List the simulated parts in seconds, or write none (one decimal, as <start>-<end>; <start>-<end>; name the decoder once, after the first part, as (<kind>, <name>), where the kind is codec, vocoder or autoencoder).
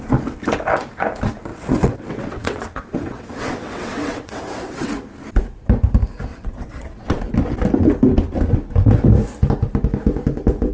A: 1.5-4.9 (vocoder, WaveNeXt); 6.3-7.2